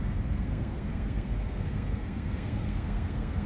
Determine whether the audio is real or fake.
fake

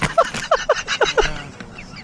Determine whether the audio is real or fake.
real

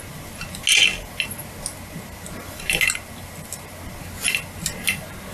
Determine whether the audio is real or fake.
real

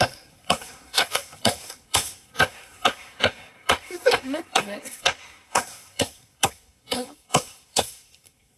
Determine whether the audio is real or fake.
fake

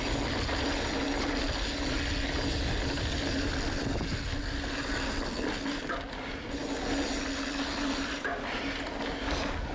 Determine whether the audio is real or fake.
real